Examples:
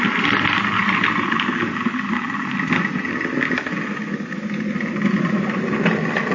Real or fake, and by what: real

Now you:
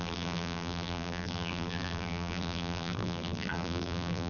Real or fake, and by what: fake, vocoder, BigVGAN v2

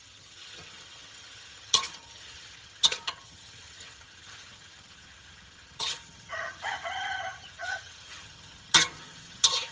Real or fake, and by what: fake, vocoder, HiFi-GAN